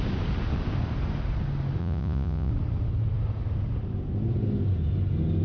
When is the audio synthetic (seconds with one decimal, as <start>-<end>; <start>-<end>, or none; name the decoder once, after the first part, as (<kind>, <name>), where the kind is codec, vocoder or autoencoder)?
1.8-2.5 (vocoder, Vocos)